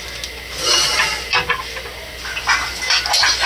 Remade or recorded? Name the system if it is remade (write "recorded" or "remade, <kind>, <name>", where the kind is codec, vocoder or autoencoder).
recorded